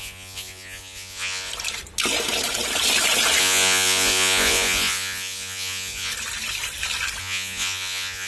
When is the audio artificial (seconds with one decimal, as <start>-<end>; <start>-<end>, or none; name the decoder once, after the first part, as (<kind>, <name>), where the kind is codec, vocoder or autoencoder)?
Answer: 0.0-1.5 (vocoder, Vocos); 3.4-6.1; 7.2-8.3